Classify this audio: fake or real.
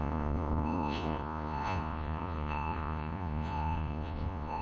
fake